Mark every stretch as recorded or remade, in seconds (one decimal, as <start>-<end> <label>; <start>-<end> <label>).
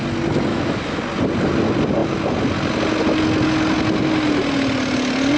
0.0-0.5 recorded; 0.5-1.0 remade; 1.0-5.4 recorded